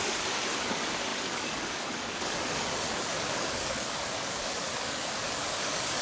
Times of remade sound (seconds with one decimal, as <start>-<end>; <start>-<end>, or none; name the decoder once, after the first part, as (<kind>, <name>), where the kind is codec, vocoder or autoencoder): 0.0-6.0 (codec, DAC)